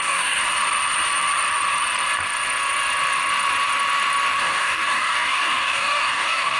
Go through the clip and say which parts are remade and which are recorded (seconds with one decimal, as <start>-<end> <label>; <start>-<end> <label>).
0.0-0.4 remade; 0.4-4.4 recorded; 4.4-6.6 remade

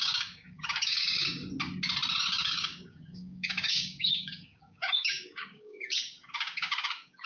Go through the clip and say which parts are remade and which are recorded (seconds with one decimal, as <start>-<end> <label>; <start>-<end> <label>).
0.0-1.4 remade; 1.4-2.2 recorded; 2.2-7.3 remade

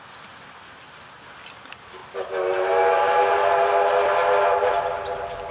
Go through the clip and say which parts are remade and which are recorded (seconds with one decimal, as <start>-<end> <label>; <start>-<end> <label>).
0.0-5.5 recorded